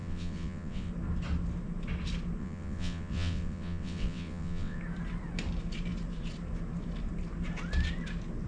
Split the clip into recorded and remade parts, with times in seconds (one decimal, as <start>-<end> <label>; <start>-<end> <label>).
0.0-0.9 remade; 0.9-2.4 recorded; 2.4-4.8 remade; 4.8-8.5 recorded